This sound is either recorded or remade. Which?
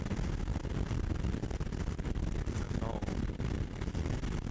recorded